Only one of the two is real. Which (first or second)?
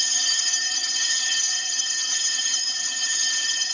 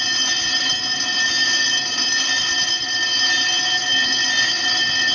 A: second